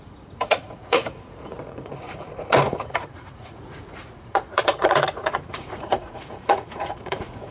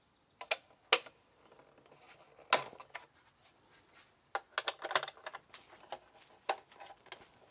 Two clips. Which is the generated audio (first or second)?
first